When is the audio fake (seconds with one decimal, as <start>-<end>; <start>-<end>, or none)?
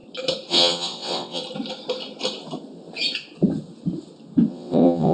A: 0.5-1.4; 4.5-5.1